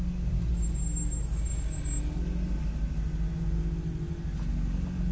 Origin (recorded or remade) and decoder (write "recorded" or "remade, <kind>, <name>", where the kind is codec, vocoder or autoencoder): recorded